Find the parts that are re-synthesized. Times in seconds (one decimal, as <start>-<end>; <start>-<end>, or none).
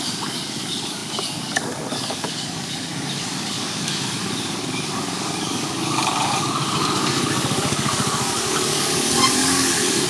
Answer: 0.0-10.1